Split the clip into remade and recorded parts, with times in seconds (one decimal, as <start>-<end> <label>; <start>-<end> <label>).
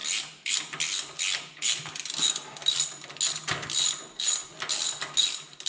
0.0-5.7 recorded